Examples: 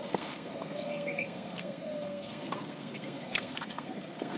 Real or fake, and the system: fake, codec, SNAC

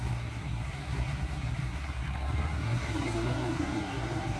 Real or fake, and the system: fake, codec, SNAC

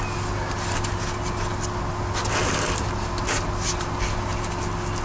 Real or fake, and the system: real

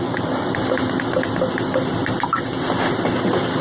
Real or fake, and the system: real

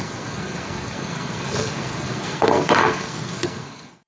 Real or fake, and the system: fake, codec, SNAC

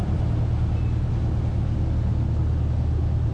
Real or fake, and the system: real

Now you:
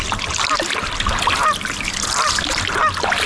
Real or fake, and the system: real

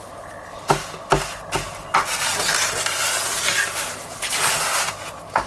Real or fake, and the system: real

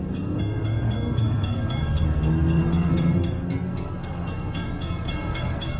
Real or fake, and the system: fake, codec, SNAC